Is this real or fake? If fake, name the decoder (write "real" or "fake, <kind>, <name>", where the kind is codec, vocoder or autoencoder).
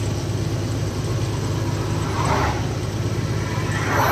real